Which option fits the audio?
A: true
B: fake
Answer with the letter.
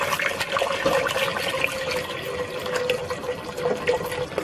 A